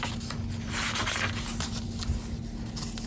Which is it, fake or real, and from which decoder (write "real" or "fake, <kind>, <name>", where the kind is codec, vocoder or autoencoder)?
real